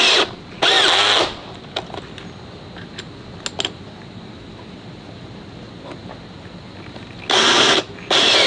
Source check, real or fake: real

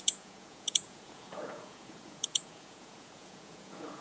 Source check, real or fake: fake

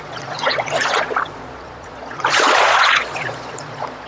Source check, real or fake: fake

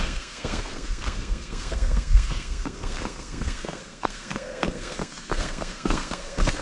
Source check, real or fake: fake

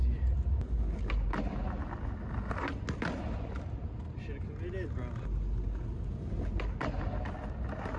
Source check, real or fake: real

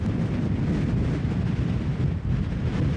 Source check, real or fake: real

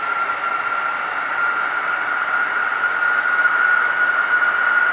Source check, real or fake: real